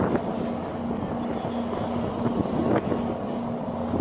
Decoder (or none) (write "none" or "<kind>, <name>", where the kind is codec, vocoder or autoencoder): none